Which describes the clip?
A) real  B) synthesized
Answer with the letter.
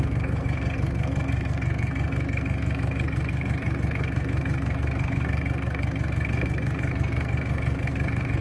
B